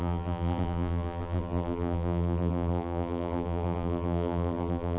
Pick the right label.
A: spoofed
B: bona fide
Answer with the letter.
A